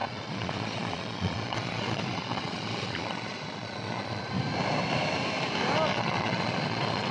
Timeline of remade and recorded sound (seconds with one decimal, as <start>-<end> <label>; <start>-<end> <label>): 0.0-4.3 remade; 4.3-5.9 recorded; 5.9-7.1 remade